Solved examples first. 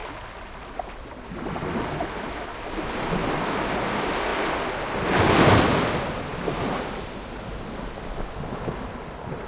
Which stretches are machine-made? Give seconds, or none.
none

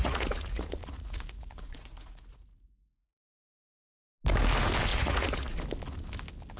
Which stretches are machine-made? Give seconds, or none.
0.0-4.0 (vocoder, Vocos); 4.9-5.6